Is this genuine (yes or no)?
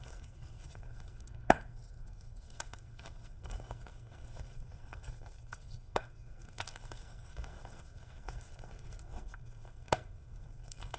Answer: no